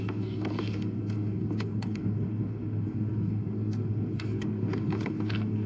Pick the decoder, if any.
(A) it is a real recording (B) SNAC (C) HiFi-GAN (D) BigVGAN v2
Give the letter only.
B